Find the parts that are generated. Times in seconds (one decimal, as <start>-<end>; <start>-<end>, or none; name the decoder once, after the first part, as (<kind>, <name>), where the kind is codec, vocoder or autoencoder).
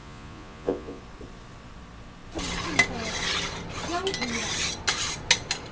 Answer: 0.0-1.0 (vocoder, Vocos)